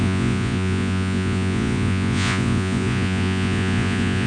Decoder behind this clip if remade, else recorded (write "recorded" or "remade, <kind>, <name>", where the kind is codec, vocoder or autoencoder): remade, vocoder, Vocos